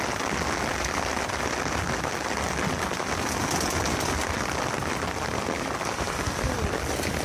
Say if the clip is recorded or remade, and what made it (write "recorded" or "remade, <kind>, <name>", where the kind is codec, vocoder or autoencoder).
recorded